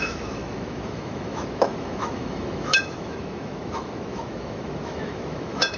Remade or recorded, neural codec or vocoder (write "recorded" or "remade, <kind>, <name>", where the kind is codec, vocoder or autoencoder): remade, autoencoder, DAC-VAE